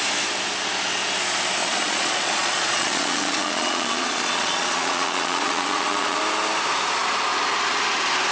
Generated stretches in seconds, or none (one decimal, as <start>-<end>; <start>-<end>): 1.6-6.2